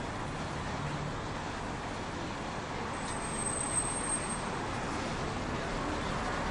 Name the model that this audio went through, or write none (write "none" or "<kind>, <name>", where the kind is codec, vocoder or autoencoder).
none